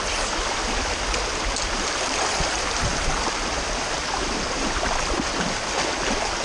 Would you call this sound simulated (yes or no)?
no